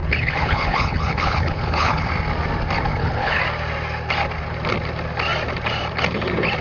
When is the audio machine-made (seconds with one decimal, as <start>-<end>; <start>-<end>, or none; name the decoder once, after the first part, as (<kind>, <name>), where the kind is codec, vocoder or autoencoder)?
0.0-2.1 (codec, HILCodec); 2.9-3.4